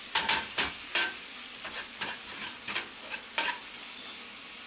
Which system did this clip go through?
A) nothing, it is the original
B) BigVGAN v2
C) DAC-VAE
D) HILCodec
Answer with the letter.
A